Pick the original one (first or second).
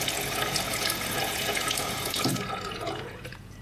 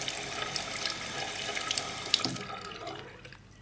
second